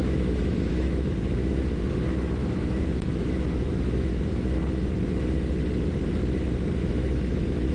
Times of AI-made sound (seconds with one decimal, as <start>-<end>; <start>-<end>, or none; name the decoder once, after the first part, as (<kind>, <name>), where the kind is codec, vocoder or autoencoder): 0.0-4.6 (autoencoder, DAC-VAE); 6.8-7.7